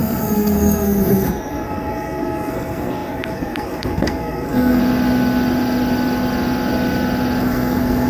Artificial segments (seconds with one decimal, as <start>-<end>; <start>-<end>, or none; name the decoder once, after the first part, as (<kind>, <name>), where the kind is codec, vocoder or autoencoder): 0.0-4.8 (codec, SNAC); 7.4-8.1